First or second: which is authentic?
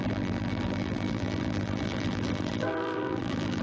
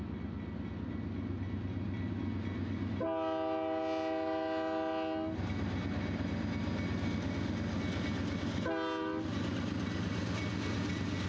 second